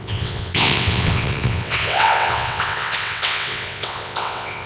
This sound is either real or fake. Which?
fake